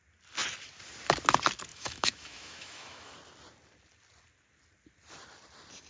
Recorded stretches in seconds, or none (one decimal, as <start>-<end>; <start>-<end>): 0.0-1.7; 3.1-5.9